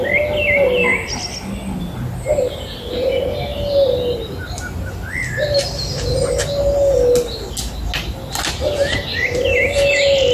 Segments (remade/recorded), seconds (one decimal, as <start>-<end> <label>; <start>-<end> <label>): 0.0-10.3 recorded